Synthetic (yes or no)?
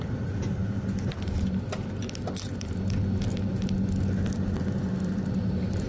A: no